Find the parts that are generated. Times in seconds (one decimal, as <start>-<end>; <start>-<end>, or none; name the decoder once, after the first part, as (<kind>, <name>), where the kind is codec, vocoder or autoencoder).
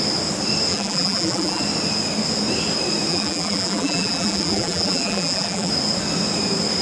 0.7-1.6 (vocoder, BigVGAN v2); 3.1-5.7